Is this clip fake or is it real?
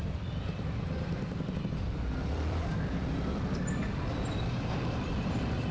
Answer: fake